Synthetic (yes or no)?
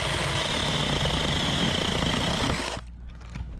no